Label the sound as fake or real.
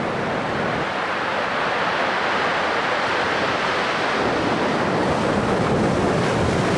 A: real